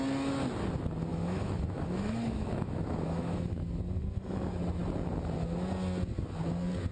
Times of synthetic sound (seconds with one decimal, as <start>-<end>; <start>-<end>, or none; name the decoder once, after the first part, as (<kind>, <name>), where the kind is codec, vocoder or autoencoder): 1.1-3.8 (autoencoder, DAC-VAE)